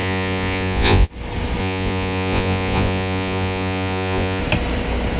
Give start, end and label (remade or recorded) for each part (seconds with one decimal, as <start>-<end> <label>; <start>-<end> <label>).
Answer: 0.0-1.1 remade; 1.1-1.6 recorded; 1.6-4.4 remade; 4.4-5.2 recorded